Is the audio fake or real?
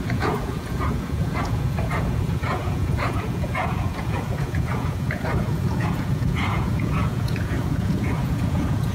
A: fake